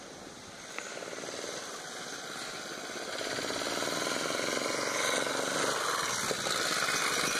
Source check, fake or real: real